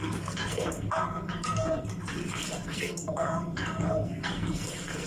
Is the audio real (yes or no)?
no